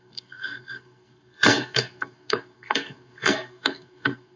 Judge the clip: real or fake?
fake